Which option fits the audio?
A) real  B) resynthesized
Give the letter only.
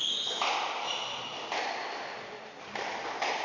A